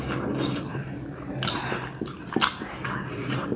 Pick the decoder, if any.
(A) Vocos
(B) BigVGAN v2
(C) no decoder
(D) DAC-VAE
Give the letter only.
C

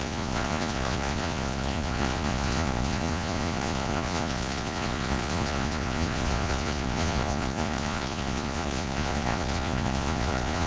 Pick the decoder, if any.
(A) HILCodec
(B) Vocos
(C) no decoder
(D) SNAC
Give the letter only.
B